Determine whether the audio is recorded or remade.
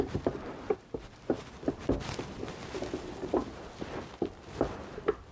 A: remade